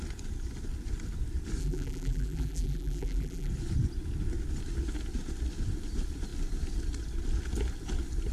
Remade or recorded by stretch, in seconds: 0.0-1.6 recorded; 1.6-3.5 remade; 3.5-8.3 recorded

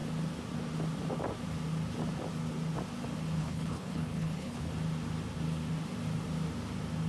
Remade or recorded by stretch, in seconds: 0.0-3.4 recorded; 3.4-4.7 remade; 4.7-7.1 recorded

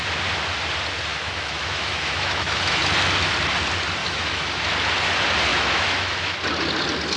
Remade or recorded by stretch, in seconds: 0.0-1.1 recorded; 1.1-2.8 remade; 2.8-4.0 recorded; 4.0-4.6 remade; 4.6-5.5 recorded; 5.5-6.4 remade; 6.4-7.2 recorded

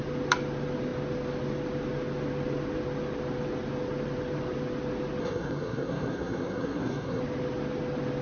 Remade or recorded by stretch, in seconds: 0.0-5.2 recorded; 5.2-7.2 remade; 7.2-8.2 recorded

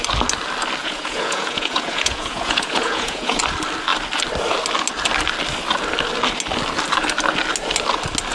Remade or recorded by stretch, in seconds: 0.0-0.8 recorded; 0.8-3.4 remade; 3.4-8.3 recorded